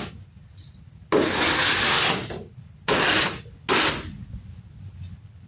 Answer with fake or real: real